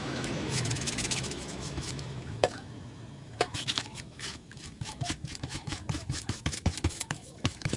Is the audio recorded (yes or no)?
no